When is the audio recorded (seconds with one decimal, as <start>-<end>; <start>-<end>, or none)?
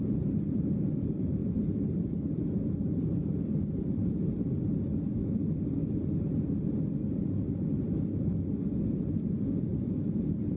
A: 5.2-9.0